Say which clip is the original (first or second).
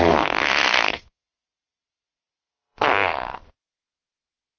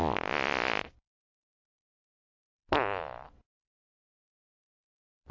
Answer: second